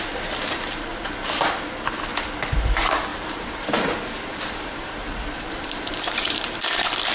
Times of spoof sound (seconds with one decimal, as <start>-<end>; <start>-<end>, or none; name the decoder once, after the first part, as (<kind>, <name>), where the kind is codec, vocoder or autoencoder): 3.1-3.9 (vocoder, BigVGAN v2); 4.3-6.6